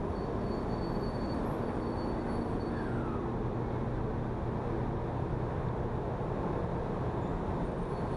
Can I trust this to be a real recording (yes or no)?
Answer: yes